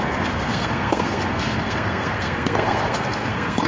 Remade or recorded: remade